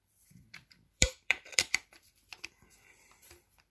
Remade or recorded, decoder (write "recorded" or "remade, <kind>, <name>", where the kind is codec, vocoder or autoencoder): remade, vocoder, BigVGAN v2